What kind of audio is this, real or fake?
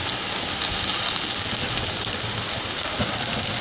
real